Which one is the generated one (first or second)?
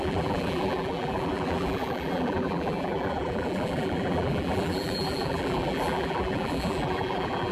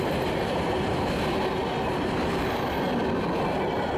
first